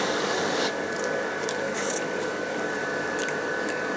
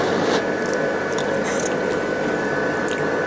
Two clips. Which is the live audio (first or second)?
second